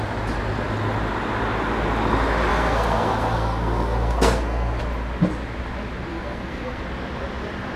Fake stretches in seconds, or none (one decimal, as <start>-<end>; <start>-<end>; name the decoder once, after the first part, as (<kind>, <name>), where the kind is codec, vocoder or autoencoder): 2.5-4.8 (codec, SNAC); 6.1-6.8